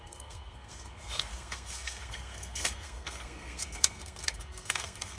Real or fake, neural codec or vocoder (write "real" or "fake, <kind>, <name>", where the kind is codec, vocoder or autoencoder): fake, codec, SNAC